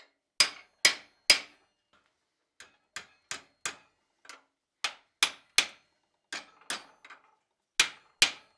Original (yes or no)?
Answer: yes